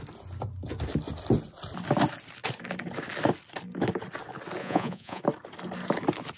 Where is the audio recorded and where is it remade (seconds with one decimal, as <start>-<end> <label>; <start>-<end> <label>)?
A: 0.0-4.6 recorded; 4.6-5.2 remade; 5.2-6.4 recorded